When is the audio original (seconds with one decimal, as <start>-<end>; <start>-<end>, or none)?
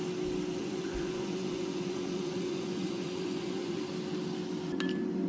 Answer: 0.0-0.6; 3.8-5.3